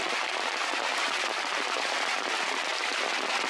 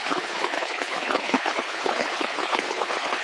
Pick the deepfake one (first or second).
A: second